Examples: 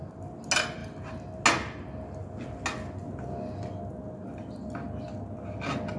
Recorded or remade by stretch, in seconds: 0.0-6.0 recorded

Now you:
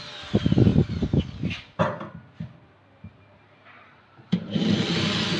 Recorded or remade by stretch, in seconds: 0.0-3.1 recorded; 3.1-4.7 remade; 4.7-5.4 recorded